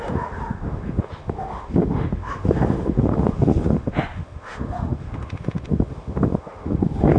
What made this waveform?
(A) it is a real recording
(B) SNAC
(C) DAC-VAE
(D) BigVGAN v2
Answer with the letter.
C